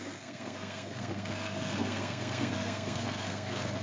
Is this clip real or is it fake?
fake